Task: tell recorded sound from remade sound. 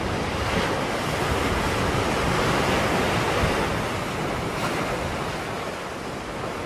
recorded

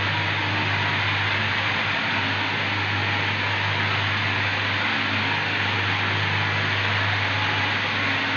recorded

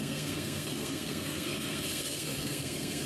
remade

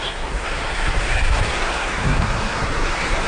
remade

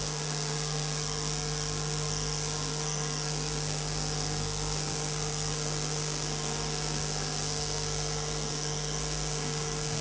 remade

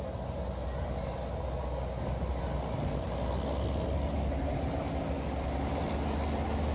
recorded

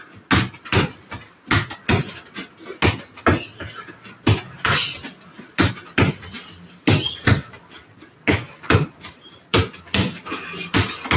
recorded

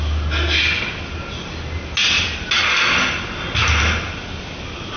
recorded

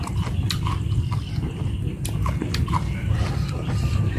recorded